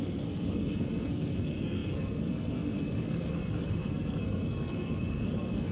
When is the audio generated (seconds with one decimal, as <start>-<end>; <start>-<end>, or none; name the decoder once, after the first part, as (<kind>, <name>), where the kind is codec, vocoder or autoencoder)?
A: 0.0-5.7 (codec, SNAC)